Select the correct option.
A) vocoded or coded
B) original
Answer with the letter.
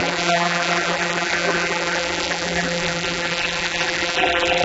A